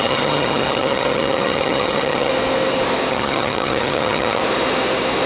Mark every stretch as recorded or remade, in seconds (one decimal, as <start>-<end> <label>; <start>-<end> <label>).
0.0-2.3 remade; 2.3-3.1 recorded; 3.1-4.4 remade; 4.4-5.3 recorded

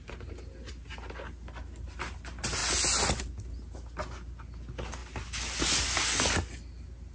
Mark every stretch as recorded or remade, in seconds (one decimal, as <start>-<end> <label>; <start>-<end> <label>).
0.0-7.1 recorded

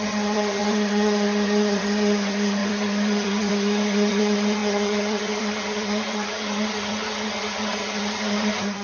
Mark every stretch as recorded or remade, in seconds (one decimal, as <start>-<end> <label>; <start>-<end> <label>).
0.0-8.8 remade